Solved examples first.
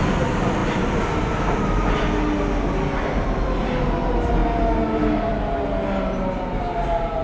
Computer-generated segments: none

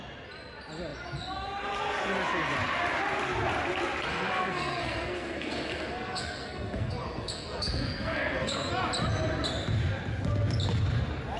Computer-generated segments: 4.1-8.7 (codec, SNAC)

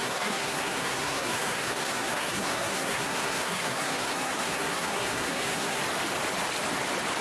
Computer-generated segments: 0.0-5.8 (codec, SNAC)

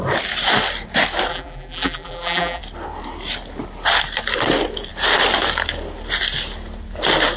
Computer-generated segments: 1.3-2.6 (vocoder, BigVGAN v2)